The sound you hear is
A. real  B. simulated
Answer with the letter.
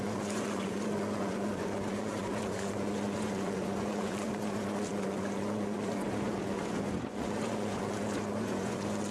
B